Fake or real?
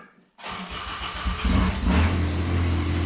real